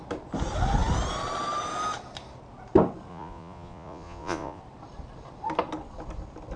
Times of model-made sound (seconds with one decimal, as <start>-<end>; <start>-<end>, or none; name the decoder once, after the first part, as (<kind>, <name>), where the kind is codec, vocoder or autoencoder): 3.1-4.6 (vocoder, Vocos)

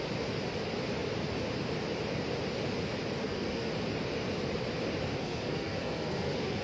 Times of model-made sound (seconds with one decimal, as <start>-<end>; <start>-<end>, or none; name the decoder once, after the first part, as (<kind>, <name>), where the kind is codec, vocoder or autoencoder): 3.2-3.7 (codec, SNAC); 5.2-6.6

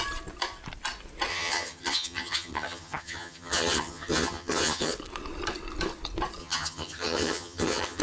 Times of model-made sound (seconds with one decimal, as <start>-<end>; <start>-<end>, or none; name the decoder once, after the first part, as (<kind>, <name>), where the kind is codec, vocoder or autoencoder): 1.3-4.9 (vocoder, HiFi-GAN); 6.4-8.0

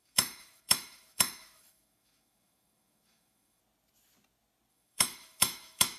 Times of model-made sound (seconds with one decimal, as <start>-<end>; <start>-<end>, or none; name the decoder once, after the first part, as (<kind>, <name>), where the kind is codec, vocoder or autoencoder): 0.0-3.6 (autoencoder, DAC-VAE); 4.7-6.0